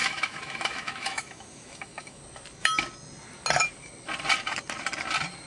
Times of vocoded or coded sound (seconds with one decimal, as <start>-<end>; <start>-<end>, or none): 0.0-2.2